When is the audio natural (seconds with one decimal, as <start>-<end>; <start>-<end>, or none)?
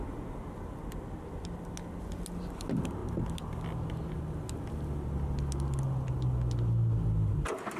0.0-7.8